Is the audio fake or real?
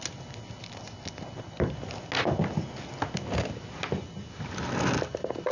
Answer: real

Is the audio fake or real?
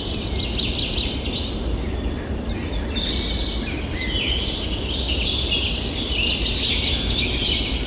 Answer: real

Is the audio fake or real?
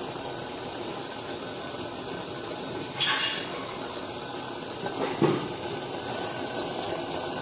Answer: real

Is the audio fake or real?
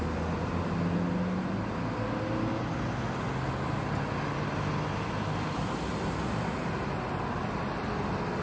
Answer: real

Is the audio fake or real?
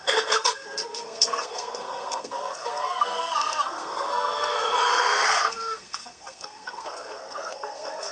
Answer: fake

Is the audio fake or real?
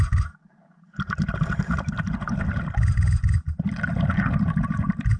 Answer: real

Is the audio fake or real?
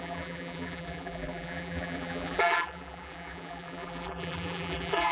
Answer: fake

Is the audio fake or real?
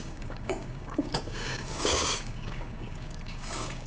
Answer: fake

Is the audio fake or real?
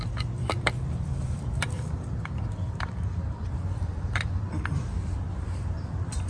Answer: fake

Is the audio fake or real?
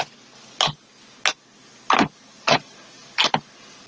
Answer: real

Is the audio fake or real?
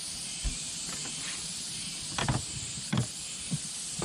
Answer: fake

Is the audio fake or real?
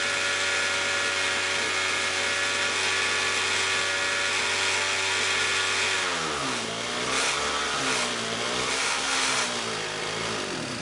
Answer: real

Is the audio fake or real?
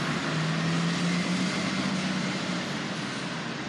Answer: real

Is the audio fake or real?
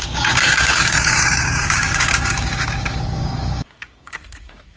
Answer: fake